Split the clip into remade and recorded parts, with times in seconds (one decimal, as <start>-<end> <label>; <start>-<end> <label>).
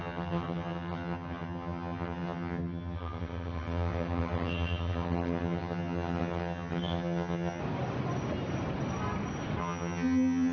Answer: 0.0-7.6 remade; 7.6-9.6 recorded; 9.6-10.5 remade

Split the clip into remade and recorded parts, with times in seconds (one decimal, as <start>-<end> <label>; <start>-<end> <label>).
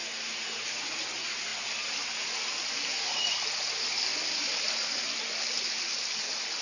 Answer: 0.0-6.6 recorded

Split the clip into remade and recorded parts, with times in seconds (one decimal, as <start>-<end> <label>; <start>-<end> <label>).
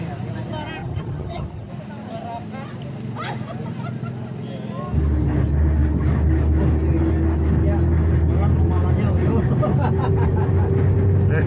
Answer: 0.0-0.8 recorded; 0.8-1.7 remade; 1.7-11.5 recorded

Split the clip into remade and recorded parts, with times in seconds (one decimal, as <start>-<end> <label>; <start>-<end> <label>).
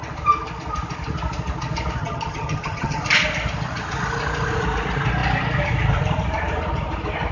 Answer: 0.0-2.0 recorded; 2.0-3.0 remade; 3.0-7.3 recorded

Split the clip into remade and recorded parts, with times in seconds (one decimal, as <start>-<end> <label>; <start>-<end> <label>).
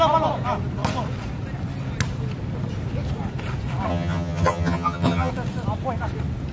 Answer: 0.0-3.9 recorded; 3.9-5.3 remade; 5.3-6.5 recorded